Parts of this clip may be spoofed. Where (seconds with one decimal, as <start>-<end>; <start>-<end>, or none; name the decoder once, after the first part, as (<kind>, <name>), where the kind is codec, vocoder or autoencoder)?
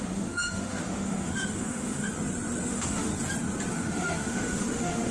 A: 0.0-2.1 (autoencoder, DAC-VAE); 2.7-3.1; 3.7-5.1